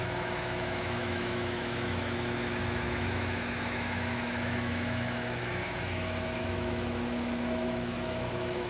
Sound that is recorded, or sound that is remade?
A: remade